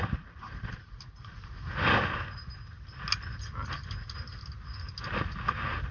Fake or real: real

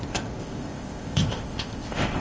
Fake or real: fake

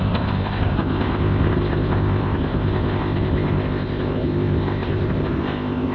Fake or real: fake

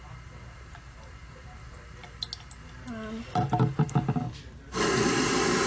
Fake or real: real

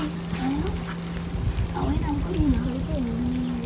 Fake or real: real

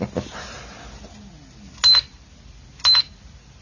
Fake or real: real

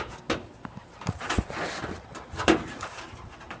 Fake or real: real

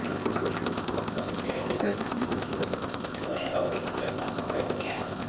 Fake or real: fake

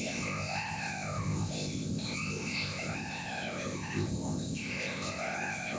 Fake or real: fake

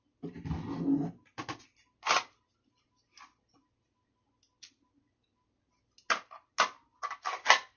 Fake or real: real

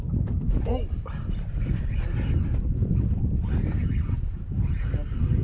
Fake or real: real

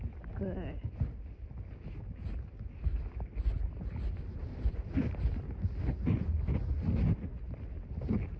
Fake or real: real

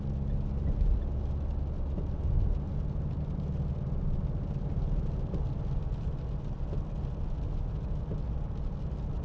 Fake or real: real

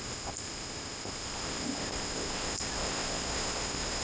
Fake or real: fake